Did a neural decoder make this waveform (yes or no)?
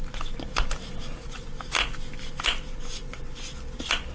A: no